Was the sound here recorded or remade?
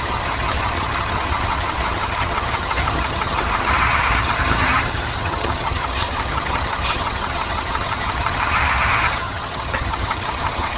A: remade